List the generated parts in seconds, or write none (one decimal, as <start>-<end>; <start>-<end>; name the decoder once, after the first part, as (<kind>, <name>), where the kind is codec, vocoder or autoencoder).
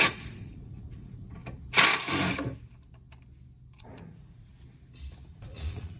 0.0-1.4 (vocoder, Vocos); 3.8-4.5; 5.3-6.0